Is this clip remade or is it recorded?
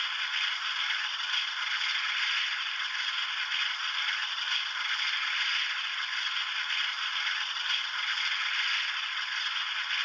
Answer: recorded